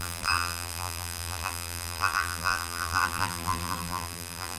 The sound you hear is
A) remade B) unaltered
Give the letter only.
A